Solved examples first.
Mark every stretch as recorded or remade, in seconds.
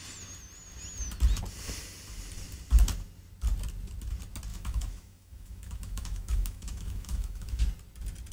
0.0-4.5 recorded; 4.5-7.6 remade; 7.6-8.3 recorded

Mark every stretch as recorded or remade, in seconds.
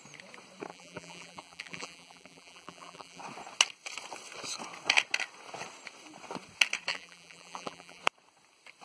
0.0-0.7 recorded; 0.7-3.2 remade; 3.2-6.9 recorded; 6.9-8.0 remade; 8.0-8.8 recorded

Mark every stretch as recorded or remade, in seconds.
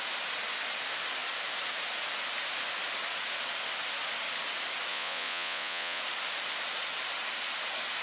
0.0-4.9 recorded; 4.9-6.0 remade; 6.0-8.0 recorded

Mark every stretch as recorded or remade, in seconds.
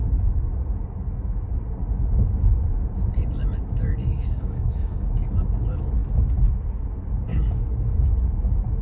0.0-4.0 recorded; 4.0-5.2 remade; 5.2-7.3 recorded; 7.3-8.1 remade; 8.1-8.8 recorded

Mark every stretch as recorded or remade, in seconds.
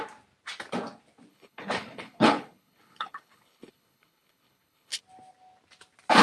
0.0-1.3 recorded; 1.3-5.0 remade; 5.0-6.2 recorded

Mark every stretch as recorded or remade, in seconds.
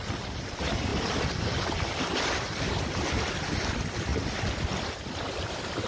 0.0-5.9 recorded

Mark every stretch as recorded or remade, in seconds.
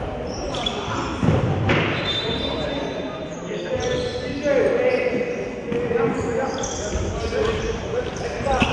0.0-1.1 remade; 1.1-1.8 recorded; 1.8-4.3 remade; 4.3-7.5 recorded; 7.5-8.7 remade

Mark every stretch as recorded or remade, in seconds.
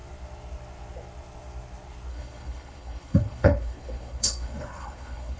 0.0-2.1 recorded; 2.1-5.4 remade